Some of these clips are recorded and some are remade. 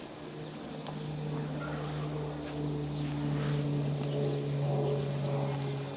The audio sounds recorded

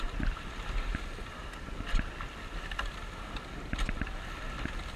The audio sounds recorded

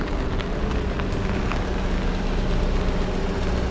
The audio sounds recorded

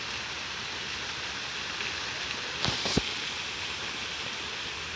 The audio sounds recorded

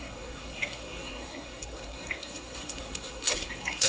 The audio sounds remade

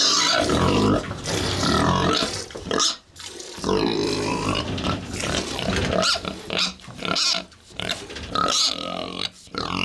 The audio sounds recorded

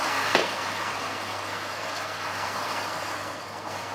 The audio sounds remade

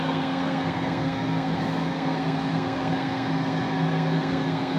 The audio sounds remade